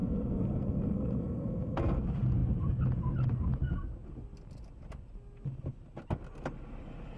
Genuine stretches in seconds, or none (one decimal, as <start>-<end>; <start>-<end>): 2.0-7.2